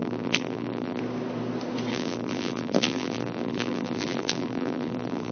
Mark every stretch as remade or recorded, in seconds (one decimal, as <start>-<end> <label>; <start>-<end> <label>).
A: 0.0-1.0 remade; 1.0-1.9 recorded; 1.9-5.3 remade